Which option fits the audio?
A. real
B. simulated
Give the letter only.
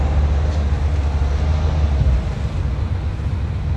A